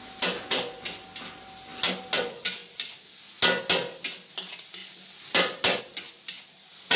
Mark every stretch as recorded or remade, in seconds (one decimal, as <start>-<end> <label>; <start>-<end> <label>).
0.0-7.0 recorded